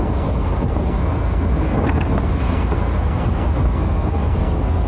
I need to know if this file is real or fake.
fake